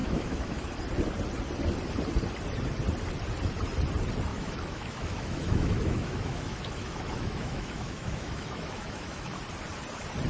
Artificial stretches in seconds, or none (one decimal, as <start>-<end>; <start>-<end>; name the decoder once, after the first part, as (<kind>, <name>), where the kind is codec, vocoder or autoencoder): 0.0-0.8 (autoencoder, DAC-VAE); 4.3-9.4